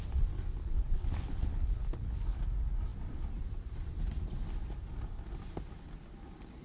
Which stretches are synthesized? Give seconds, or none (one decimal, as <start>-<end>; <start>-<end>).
0.6-2.4